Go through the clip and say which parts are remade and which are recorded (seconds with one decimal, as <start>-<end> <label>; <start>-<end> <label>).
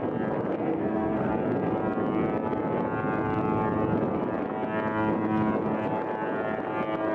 0.0-0.7 recorded; 0.7-1.3 remade; 1.3-7.1 recorded